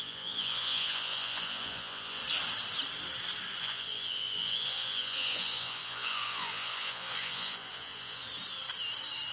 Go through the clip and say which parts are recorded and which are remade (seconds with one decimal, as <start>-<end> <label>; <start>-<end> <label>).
0.0-2.2 remade; 2.2-3.6 recorded; 3.6-8.2 remade; 8.2-9.3 recorded